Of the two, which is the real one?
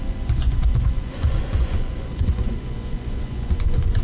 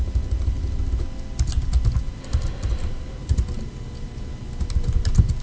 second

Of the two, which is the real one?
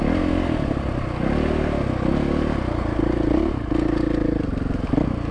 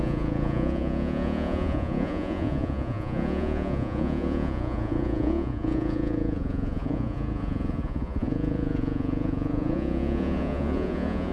first